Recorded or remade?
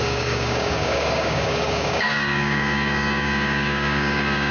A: remade